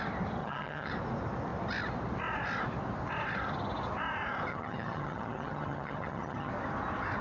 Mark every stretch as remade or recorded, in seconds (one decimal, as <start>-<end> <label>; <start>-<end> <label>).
0.0-0.4 recorded; 0.4-0.9 remade; 0.9-4.5 recorded; 4.5-6.5 remade; 6.5-7.2 recorded